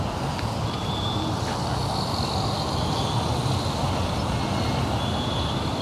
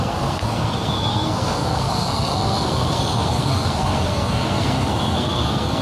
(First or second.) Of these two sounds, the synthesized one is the second